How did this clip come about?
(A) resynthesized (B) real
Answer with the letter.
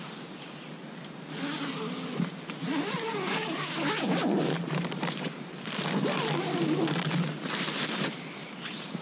B